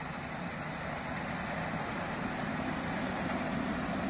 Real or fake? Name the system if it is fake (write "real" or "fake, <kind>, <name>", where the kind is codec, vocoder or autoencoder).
real